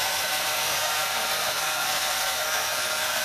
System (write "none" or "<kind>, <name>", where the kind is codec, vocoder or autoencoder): codec, SNAC